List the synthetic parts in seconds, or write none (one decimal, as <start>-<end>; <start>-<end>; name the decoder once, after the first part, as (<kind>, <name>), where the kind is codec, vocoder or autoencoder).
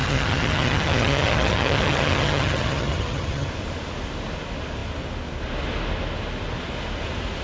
0.0-3.5 (vocoder, HiFi-GAN)